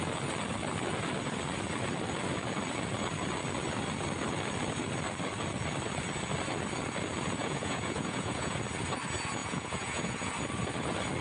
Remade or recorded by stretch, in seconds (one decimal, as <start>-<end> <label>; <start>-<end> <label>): 0.0-7.4 recorded; 7.4-8.6 remade; 8.6-9.4 recorded; 9.4-10.3 remade; 10.3-11.2 recorded